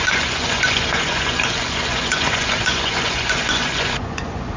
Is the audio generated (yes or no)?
yes